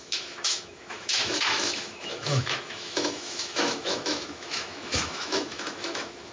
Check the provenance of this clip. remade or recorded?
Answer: remade